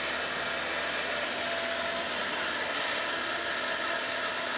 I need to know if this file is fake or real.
real